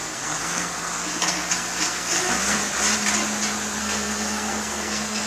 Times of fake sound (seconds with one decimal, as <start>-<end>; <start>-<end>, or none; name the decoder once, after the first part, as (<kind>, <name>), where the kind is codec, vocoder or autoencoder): 0.0-2.6 (codec, SNAC); 3.8-5.3